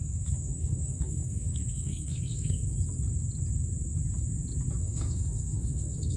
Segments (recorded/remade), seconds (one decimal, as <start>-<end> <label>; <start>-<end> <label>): 0.0-2.6 remade; 2.6-4.8 recorded; 4.8-6.2 remade